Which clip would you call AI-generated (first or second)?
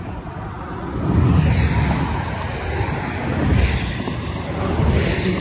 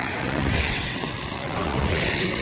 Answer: second